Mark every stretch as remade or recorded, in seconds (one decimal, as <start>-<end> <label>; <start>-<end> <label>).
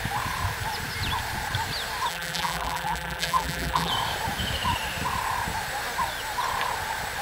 0.0-2.1 recorded; 2.1-3.9 remade; 3.9-7.2 recorded